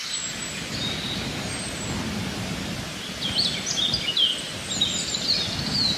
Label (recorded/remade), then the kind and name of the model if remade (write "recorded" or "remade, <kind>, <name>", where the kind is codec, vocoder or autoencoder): recorded